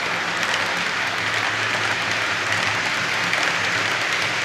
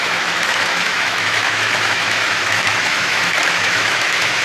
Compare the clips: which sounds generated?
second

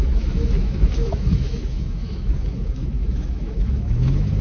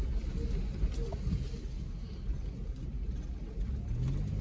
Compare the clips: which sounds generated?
first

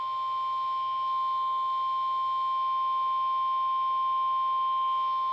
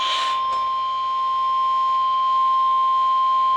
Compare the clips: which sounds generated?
second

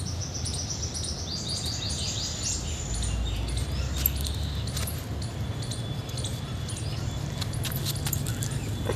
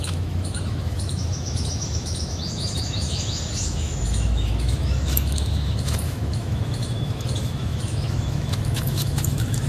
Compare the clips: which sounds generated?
second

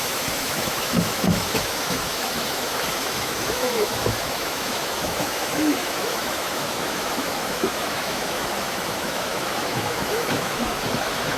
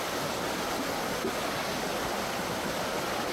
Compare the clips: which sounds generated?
first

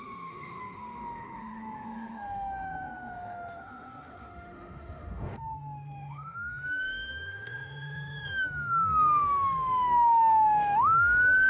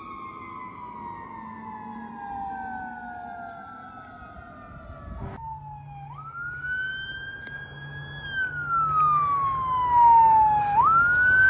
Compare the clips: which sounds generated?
first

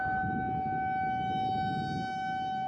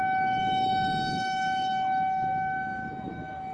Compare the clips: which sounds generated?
second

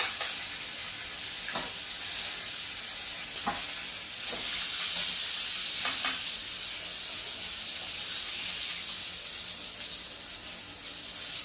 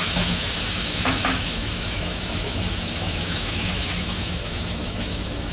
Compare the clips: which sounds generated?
second